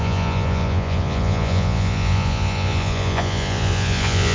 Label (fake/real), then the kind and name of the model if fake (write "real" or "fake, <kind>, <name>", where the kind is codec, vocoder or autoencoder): fake, vocoder, Vocos